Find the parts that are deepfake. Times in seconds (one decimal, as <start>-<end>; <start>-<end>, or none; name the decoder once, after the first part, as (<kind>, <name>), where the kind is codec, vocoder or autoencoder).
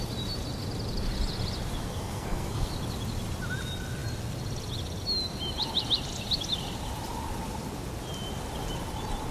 1.8-2.7 (codec, SNAC)